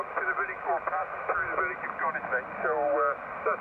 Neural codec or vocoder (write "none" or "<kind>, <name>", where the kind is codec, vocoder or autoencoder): none